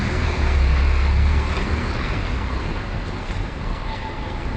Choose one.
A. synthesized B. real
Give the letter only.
A